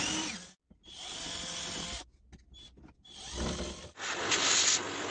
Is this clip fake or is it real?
real